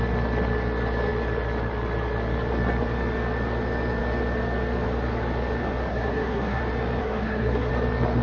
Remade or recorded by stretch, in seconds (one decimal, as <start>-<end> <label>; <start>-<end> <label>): 0.0-5.9 recorded; 5.9-6.6 remade; 6.6-7.0 recorded; 7.0-7.7 remade; 7.7-8.2 recorded